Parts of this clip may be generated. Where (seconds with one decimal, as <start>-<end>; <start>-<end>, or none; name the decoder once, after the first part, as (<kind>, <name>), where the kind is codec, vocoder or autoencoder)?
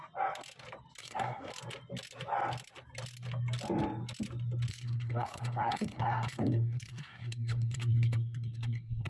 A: 1.0-1.5 (codec, SNAC); 4.7-9.1